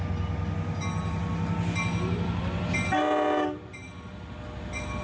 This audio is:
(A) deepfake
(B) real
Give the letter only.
B